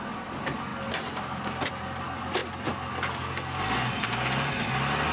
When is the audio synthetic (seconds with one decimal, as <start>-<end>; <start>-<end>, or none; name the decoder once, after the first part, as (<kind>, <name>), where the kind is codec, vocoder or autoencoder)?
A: none